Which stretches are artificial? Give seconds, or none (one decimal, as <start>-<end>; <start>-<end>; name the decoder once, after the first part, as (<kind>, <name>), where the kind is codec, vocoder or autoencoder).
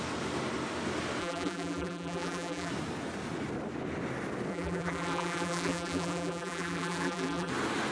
1.2-2.7 (vocoder, BigVGAN v2); 4.5-7.5